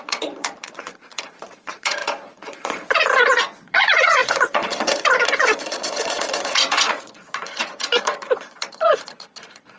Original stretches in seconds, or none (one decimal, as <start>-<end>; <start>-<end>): none